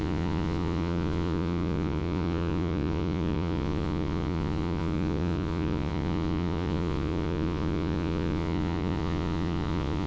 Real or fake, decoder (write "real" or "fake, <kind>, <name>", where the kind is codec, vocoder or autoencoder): fake, vocoder, Vocos